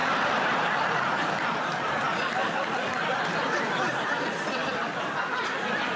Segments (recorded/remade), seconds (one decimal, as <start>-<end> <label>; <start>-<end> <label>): 0.0-6.0 recorded